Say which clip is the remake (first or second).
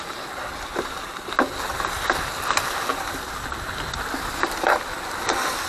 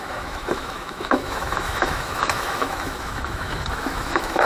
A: second